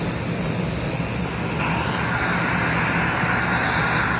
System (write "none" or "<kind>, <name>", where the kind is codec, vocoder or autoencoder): none